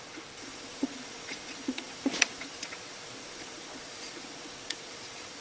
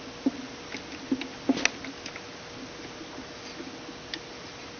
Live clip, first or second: second